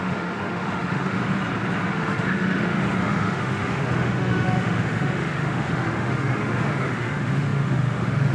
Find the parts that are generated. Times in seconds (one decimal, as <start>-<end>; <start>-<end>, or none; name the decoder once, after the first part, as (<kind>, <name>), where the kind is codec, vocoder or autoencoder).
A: 0.0-1.2 (autoencoder, DAC-VAE); 1.9-8.3